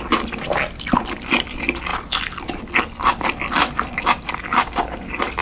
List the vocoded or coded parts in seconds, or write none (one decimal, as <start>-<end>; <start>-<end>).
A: none